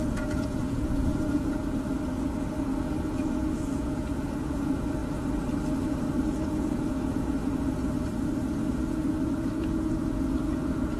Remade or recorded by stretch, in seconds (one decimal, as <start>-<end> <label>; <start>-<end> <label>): 0.0-1.6 remade; 1.6-2.5 recorded; 2.5-5.0 remade; 5.0-6.5 recorded; 6.5-7.4 remade; 7.4-8.9 recorded; 8.9-11.0 remade